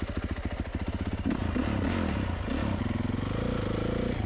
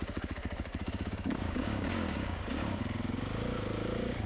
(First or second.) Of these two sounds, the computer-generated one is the second